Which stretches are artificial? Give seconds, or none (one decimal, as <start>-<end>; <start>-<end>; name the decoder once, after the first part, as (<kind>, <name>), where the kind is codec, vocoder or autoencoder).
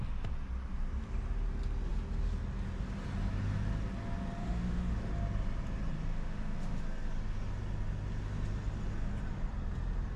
4.4-5.1 (autoencoder, DAC-VAE); 6.1-6.8